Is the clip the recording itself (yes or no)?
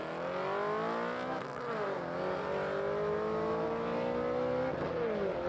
yes